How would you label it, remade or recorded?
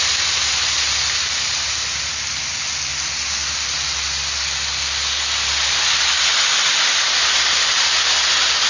recorded